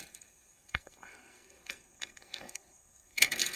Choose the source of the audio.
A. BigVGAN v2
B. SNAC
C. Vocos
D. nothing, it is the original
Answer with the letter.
B